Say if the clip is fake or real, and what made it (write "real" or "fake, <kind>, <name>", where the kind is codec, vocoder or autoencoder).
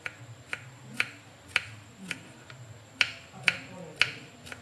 real